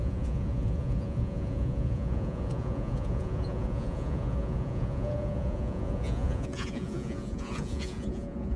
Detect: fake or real fake